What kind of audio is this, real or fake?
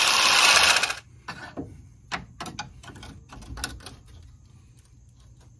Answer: real